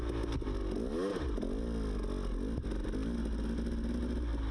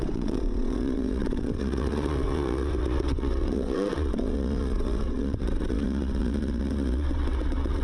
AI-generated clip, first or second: second